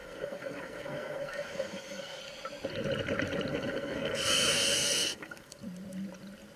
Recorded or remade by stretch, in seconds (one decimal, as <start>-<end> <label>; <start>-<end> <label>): 0.0-2.2 remade; 2.2-3.5 recorded; 3.5-5.6 remade; 5.6-6.6 recorded